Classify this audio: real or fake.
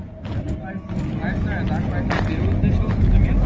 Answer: real